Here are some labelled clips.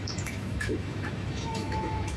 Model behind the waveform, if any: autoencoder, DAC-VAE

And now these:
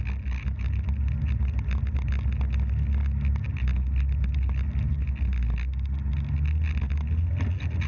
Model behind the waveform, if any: none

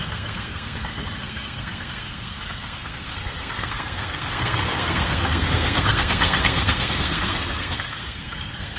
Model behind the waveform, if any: codec, SNAC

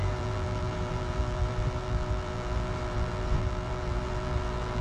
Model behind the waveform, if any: vocoder, BigVGAN v2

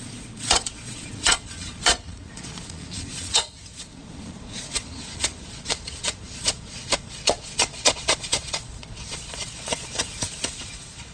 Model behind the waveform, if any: vocoder, Vocos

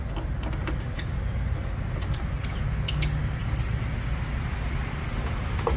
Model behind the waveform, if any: none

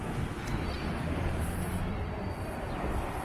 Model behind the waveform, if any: none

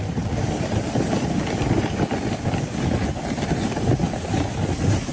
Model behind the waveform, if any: none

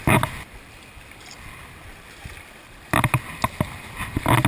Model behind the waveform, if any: none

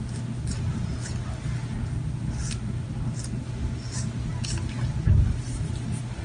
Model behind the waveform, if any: none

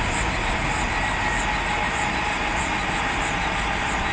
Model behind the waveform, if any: none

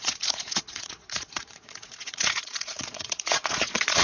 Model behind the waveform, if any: vocoder, Vocos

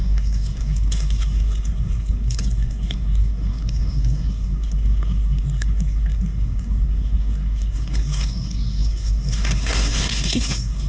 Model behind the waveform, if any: codec, SNAC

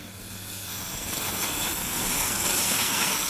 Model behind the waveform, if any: codec, SNAC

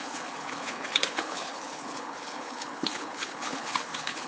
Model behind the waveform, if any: codec, HILCodec